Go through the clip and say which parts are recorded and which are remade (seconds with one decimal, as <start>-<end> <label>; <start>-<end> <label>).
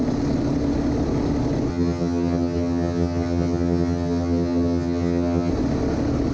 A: 0.0-1.7 recorded; 1.7-5.5 remade; 5.5-6.3 recorded